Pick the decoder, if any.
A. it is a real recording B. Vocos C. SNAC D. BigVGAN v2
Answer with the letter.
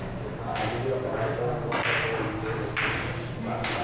A